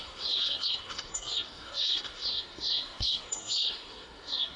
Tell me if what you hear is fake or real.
fake